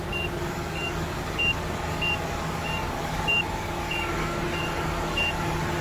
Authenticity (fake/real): fake